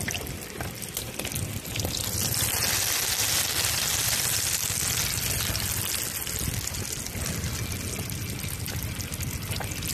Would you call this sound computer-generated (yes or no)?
no